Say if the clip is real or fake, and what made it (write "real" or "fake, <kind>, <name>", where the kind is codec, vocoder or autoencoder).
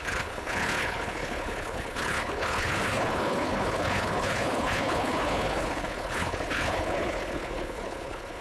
fake, codec, HILCodec